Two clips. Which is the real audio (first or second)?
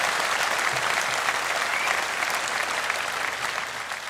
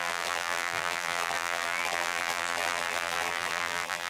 first